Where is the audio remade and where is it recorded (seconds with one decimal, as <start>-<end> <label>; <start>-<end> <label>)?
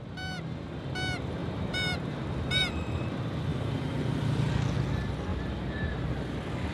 0.0-1.4 recorded; 1.4-3.1 remade; 3.1-3.5 recorded; 3.5-4.5 remade; 4.5-5.3 recorded; 5.3-6.1 remade; 6.1-6.7 recorded